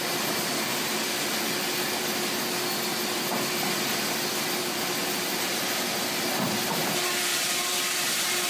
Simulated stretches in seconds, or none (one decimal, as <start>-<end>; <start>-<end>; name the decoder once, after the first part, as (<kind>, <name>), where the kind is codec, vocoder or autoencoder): 7.3-8.5 (vocoder, BigVGAN v2)